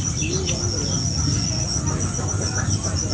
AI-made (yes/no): no